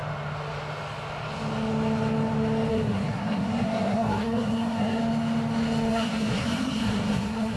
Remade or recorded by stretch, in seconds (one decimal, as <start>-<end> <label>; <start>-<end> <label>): 0.0-2.7 recorded; 2.7-5.0 remade; 5.0-5.9 recorded; 5.9-7.6 remade